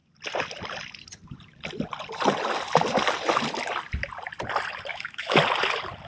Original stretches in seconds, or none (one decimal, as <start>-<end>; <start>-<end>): 0.0-4.9; 5.4-6.1